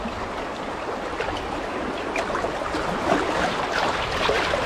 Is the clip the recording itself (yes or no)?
yes